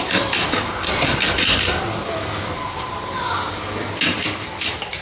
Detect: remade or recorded remade